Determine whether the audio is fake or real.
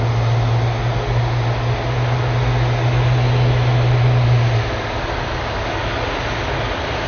real